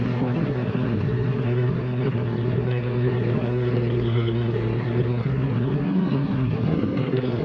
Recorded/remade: remade